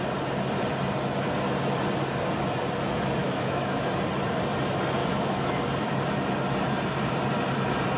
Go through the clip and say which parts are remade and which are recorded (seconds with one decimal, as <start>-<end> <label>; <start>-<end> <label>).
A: 0.0-3.2 recorded; 3.2-3.9 remade; 3.9-5.0 recorded; 5.0-5.6 remade; 5.6-8.0 recorded